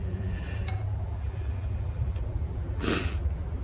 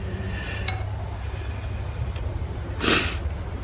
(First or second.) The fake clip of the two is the first